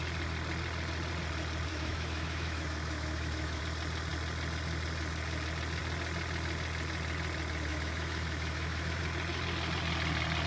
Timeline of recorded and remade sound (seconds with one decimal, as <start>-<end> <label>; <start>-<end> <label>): 0.0-1.7 recorded; 1.7-3.6 remade; 3.6-7.7 recorded; 7.7-9.0 remade; 9.0-10.5 recorded